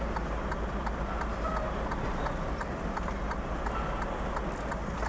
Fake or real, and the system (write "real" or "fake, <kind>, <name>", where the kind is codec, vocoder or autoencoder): real